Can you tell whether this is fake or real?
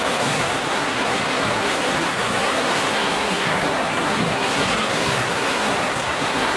fake